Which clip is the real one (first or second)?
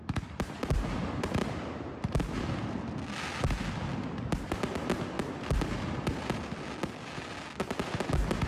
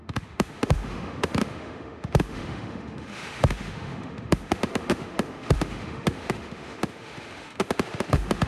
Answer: first